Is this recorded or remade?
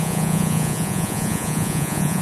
remade